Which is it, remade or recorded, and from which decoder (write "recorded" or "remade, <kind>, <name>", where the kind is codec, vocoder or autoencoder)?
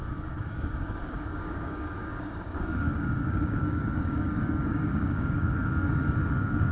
remade, codec, DAC